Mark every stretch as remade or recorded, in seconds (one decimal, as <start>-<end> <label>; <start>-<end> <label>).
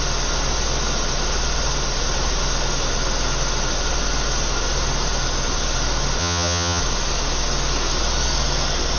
0.0-6.2 recorded; 6.2-6.8 remade; 6.8-9.0 recorded